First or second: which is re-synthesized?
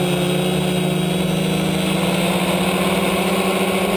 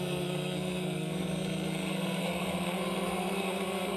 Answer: second